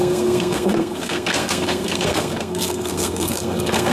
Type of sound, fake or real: fake